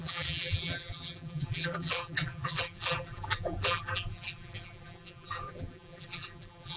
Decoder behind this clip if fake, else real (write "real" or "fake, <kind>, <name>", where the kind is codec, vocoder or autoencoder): fake, vocoder, BigVGAN v2